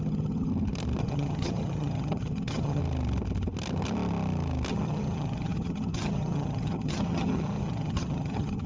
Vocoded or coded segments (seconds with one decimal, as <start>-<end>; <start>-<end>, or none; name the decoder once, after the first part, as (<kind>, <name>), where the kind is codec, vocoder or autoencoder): 0.0-0.5 (vocoder, HiFi-GAN); 1.0-2.8; 4.7-8.7